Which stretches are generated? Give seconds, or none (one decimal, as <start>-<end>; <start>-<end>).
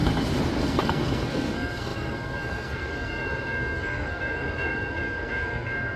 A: 0.6-6.0